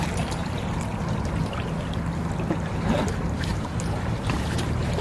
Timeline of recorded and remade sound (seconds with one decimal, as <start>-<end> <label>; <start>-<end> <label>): 0.0-0.4 remade; 0.4-3.4 recorded; 3.4-5.0 remade